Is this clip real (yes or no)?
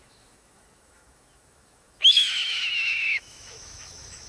no